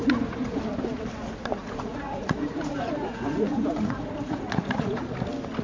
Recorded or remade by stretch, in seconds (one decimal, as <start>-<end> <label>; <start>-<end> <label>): 0.0-0.6 remade; 0.6-1.6 recorded; 1.6-5.0 remade; 5.0-5.6 recorded